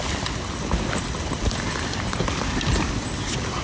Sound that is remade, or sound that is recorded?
recorded